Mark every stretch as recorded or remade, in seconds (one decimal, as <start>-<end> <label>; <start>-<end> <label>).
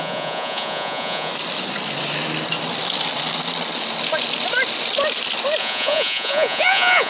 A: 0.0-1.3 remade; 1.3-5.6 recorded; 5.6-7.1 remade